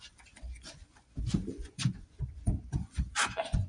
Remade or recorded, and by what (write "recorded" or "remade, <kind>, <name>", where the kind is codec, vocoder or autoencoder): remade, vocoder, Vocos